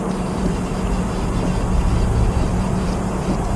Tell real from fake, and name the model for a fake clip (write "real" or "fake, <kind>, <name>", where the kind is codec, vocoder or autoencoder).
real